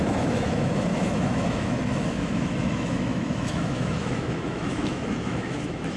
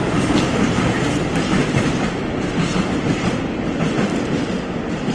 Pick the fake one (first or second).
first